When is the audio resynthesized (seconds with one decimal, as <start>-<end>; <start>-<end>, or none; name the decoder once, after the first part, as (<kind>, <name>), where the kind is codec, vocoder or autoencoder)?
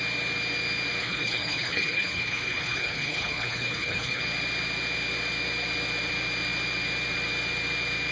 1.0-4.2 (codec, HILCodec)